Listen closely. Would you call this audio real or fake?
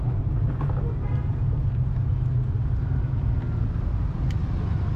real